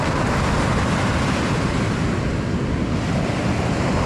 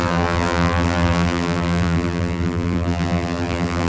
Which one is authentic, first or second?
first